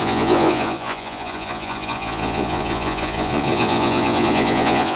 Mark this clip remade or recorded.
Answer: remade